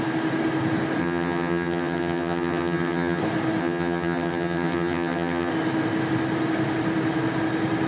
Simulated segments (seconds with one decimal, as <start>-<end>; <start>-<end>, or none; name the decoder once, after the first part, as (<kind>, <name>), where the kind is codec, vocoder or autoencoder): 1.0-3.2 (vocoder, HiFi-GAN); 3.6-5.5